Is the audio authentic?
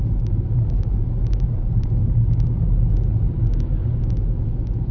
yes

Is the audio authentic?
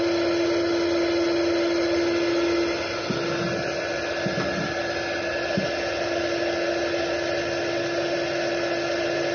yes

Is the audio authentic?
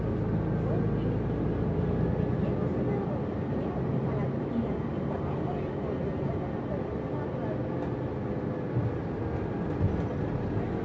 yes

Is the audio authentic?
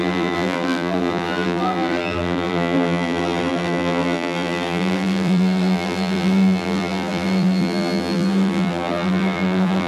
no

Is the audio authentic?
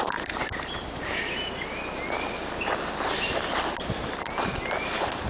yes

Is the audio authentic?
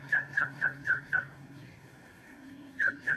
no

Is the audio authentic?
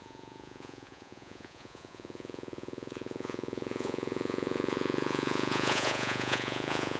no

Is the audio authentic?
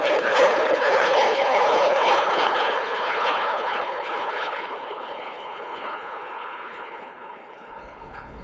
no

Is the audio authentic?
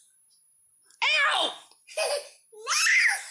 yes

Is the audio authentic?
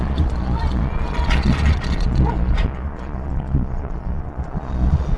no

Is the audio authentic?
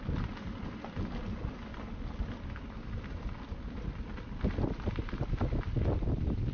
yes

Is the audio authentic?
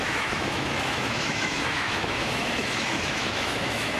no